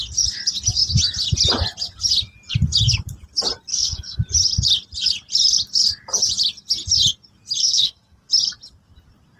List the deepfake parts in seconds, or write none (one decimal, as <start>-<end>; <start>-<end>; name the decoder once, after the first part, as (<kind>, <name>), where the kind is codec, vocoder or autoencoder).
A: 3.7-4.2 (codec, SNAC); 7.6-8.3